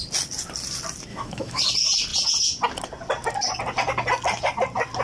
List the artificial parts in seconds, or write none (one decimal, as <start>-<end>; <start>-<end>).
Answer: 1.1-1.6

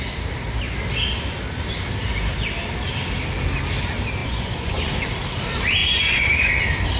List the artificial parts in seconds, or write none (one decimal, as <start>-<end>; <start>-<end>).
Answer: 4.2-4.9; 5.8-6.5

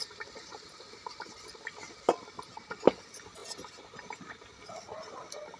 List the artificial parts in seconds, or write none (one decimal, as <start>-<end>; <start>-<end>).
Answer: 0.0-5.6

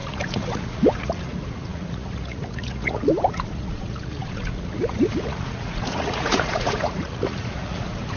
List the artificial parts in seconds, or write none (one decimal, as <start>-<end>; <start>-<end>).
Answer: 0.0-8.2

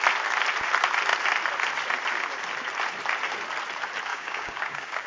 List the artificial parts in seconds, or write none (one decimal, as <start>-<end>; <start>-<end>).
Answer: 4.1-5.1

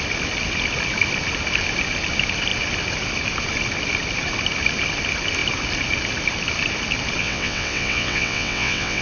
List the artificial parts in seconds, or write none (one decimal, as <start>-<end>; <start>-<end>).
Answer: 7.2-9.0

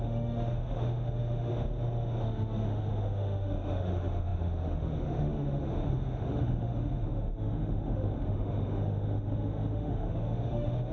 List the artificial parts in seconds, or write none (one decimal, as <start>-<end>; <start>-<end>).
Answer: 0.0-1.5; 2.2-10.9

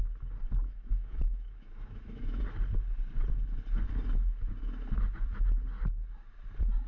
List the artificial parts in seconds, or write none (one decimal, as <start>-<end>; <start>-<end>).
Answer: 0.6-2.4